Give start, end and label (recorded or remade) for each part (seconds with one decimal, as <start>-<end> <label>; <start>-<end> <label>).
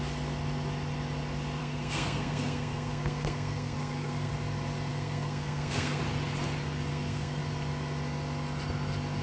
0.0-1.6 recorded; 1.6-4.3 remade; 4.3-4.9 recorded; 4.9-6.0 remade; 6.0-6.9 recorded; 6.9-7.4 remade; 7.4-9.2 recorded